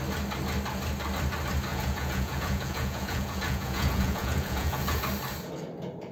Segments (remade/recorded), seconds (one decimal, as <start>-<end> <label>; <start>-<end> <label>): 0.0-1.7 recorded; 1.7-5.0 remade; 5.0-6.1 recorded